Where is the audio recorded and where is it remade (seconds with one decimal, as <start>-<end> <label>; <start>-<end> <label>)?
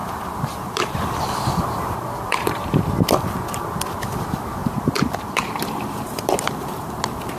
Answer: 0.0-2.7 remade; 2.7-4.6 recorded; 4.6-6.9 remade; 6.9-7.4 recorded